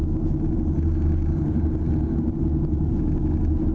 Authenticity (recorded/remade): recorded